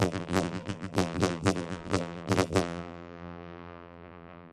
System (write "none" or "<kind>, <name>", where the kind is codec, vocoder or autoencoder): vocoder, BigVGAN v2